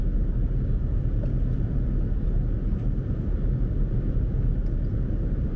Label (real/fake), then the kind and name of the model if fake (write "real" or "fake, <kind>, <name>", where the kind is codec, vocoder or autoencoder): real